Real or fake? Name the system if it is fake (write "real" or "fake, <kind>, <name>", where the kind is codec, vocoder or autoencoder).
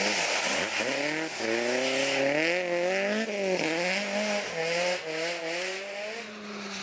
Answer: real